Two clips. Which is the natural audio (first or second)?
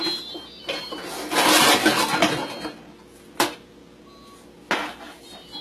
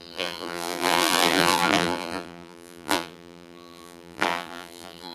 first